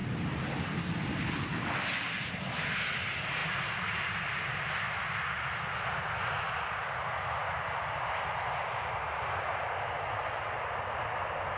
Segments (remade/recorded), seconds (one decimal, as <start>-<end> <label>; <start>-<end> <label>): 0.0-11.6 recorded